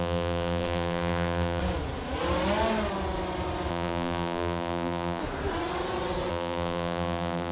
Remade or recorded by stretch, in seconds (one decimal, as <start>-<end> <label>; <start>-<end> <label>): 0.0-1.6 remade; 1.6-3.7 recorded; 3.7-5.2 remade; 5.2-6.3 recorded; 6.3-7.5 remade